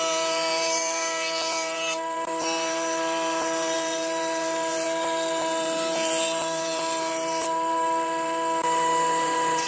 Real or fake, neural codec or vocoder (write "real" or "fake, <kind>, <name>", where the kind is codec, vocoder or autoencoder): fake, vocoder, BigVGAN v2